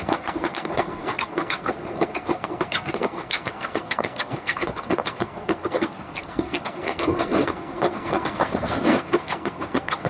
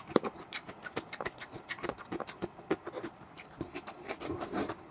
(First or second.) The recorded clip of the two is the second